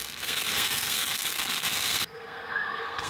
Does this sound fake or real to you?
fake